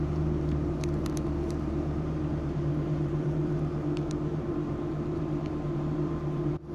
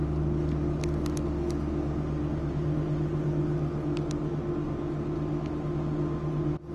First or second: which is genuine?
second